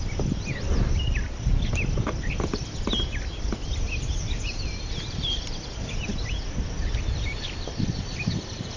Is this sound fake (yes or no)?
no